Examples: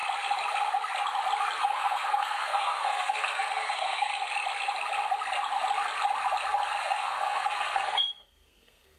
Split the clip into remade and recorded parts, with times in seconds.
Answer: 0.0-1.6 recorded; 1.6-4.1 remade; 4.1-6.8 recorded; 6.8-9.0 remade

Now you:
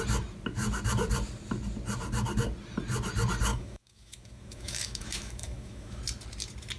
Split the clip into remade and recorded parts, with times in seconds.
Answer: 0.0-3.5 recorded; 3.5-6.0 remade; 6.0-6.8 recorded

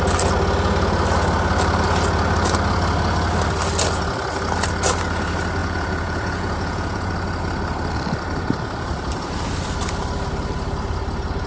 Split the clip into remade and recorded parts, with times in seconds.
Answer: 0.0-5.6 recorded; 5.6-7.1 remade; 7.1-11.5 recorded

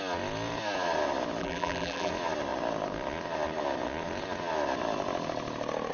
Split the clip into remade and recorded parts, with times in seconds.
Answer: 0.0-1.4 recorded; 1.4-2.1 remade; 2.1-5.9 recorded

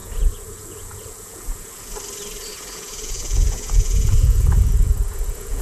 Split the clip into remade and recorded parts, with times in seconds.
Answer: 0.0-1.9 remade; 1.9-2.5 recorded; 2.5-5.6 remade

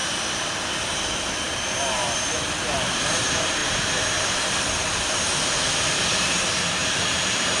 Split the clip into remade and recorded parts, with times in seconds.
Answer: 0.0-7.6 remade